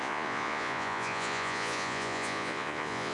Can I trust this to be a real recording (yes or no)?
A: no